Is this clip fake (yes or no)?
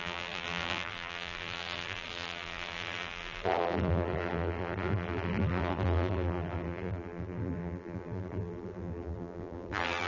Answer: yes